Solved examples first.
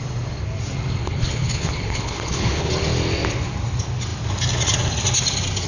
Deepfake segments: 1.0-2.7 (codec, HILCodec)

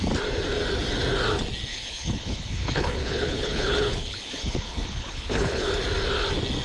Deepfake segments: 1.7-5.7 (codec, HILCodec)

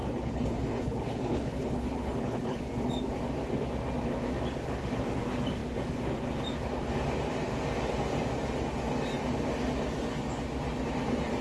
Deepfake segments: 0.0-2.6 (codec, HILCodec)

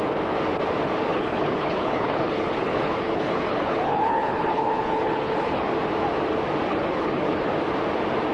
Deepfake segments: 1.1-5.7 (codec, HILCodec); 6.7-7.5

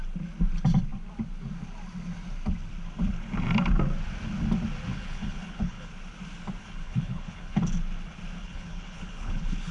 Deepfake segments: 4.9-5.9 (codec, HILCodec); 6.6-7.6; 8.4-9.7